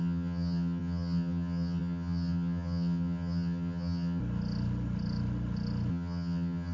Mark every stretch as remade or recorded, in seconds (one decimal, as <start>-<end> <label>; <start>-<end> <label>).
0.0-4.2 remade; 4.2-5.9 recorded; 5.9-6.7 remade